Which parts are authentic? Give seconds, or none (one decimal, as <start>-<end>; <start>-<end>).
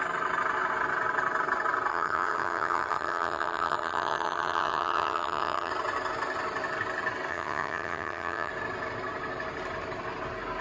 0.0-1.9; 5.7-7.3; 8.5-10.6